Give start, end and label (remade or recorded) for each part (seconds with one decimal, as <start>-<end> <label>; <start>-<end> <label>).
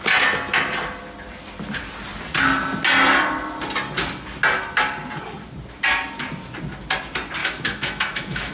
0.0-7.4 recorded; 7.4-8.5 remade